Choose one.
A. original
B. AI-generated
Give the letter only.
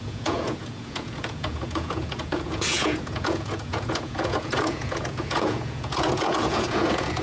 B